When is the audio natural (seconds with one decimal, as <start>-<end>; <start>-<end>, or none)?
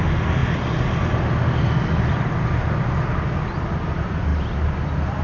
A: 0.0-5.2